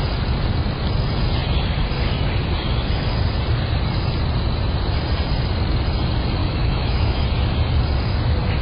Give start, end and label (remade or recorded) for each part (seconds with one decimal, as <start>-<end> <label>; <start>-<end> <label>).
0.0-6.4 recorded; 6.4-7.2 remade; 7.2-8.6 recorded